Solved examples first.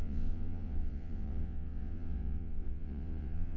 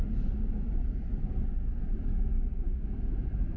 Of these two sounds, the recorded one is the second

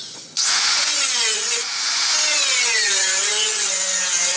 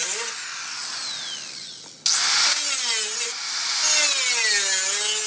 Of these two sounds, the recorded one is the second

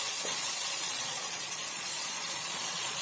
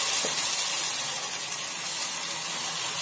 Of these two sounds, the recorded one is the second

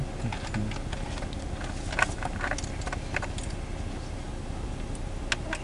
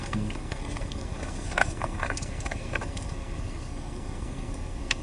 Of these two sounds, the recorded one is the first